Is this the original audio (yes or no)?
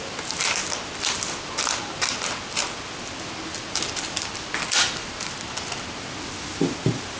yes